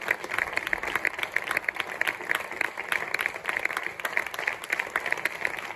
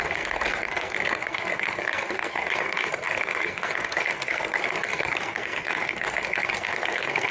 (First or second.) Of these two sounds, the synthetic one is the second